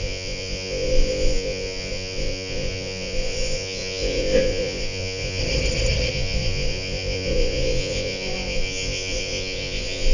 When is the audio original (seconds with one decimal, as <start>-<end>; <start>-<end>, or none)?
5.4-6.1